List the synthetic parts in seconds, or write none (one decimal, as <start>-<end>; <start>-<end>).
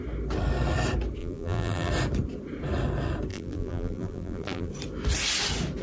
1.2-1.9; 3.3-4.7